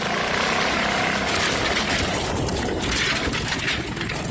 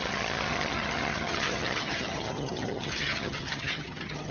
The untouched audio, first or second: first